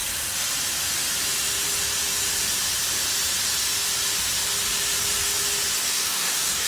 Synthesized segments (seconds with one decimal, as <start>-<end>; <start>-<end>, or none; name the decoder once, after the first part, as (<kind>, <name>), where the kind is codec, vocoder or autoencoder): 5.8-6.7 (codec, DAC)